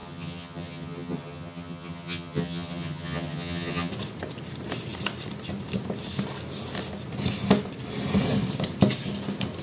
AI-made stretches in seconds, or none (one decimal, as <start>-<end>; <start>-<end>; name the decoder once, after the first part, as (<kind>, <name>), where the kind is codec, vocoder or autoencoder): 0.0-3.9 (vocoder, HiFi-GAN)